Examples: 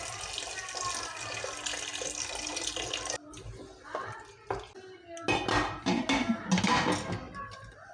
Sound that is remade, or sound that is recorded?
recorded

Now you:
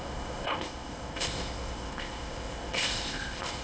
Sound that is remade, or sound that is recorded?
remade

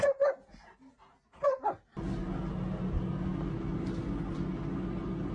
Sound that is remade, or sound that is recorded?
recorded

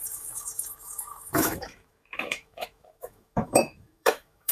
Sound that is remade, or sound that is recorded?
remade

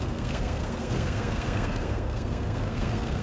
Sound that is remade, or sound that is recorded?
remade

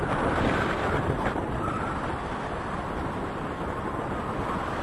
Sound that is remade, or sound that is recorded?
recorded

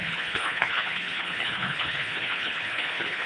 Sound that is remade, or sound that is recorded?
remade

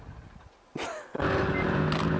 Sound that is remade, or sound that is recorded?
recorded